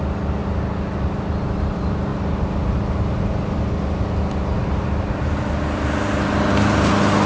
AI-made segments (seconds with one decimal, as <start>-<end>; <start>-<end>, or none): none